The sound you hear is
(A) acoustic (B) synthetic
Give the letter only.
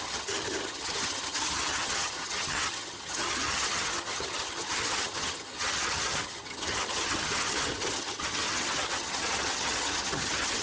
B